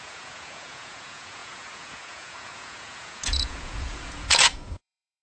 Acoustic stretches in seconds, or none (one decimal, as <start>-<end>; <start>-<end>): none